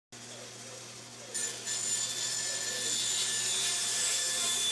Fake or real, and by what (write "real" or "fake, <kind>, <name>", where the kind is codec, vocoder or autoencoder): real